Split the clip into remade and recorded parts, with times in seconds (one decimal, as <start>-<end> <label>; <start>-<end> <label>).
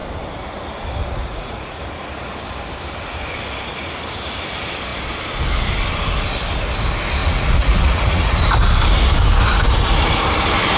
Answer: 0.0-1.0 recorded; 1.0-1.8 remade; 1.8-7.2 recorded; 7.2-8.4 remade; 8.4-10.8 recorded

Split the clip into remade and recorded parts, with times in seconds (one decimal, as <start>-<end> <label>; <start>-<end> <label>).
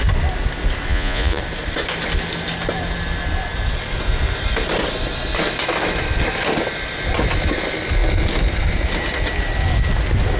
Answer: 0.0-0.9 recorded; 0.9-1.4 remade; 1.4-10.4 recorded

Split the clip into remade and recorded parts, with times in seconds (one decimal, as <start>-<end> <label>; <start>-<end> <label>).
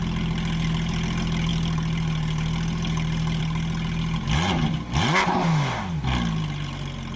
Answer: 0.0-7.2 recorded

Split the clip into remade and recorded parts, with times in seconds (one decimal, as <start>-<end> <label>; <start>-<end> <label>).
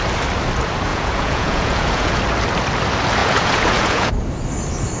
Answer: 0.0-0.9 recorded; 0.9-2.2 remade; 2.2-3.2 recorded; 3.2-4.1 remade; 4.1-5.0 recorded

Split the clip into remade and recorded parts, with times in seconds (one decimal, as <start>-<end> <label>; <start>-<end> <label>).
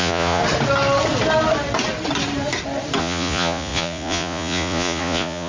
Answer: 0.0-0.4 remade; 0.4-3.0 recorded; 3.0-5.5 remade